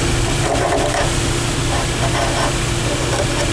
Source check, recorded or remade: recorded